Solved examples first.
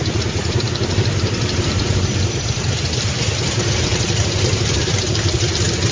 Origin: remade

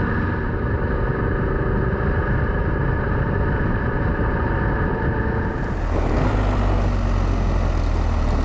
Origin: recorded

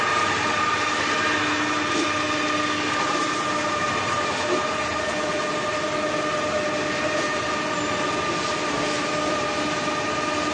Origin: recorded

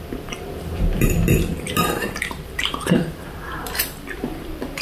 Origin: remade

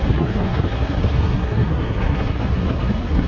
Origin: remade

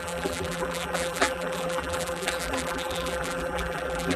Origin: remade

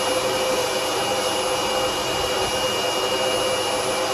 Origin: recorded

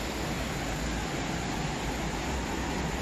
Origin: recorded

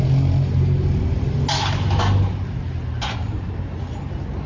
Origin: recorded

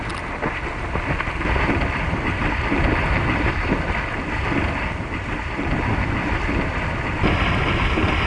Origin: recorded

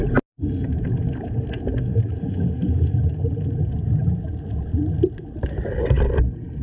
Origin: recorded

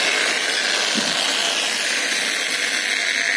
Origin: recorded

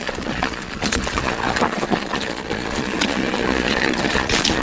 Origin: remade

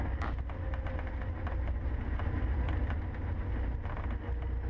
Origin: recorded